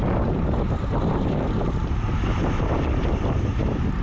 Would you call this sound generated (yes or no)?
yes